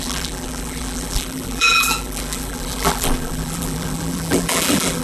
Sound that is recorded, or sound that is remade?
remade